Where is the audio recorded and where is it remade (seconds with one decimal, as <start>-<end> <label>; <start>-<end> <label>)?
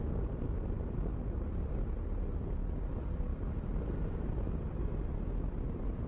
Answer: 0.0-6.1 recorded